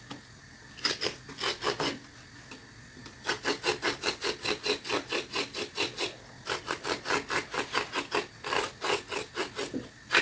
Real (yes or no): yes